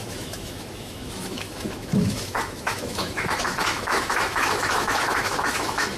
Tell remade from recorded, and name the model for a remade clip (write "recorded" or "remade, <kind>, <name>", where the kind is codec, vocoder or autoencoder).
remade, autoencoder, DAC-VAE